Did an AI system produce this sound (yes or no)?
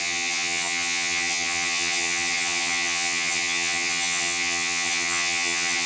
yes